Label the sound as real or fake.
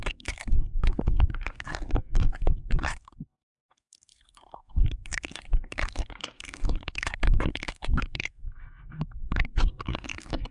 fake